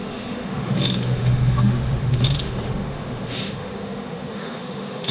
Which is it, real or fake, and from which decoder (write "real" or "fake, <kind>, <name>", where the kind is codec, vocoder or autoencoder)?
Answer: fake, autoencoder, DAC-VAE